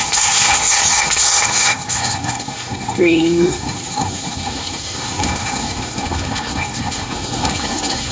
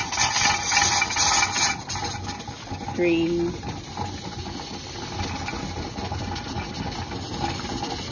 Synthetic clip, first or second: first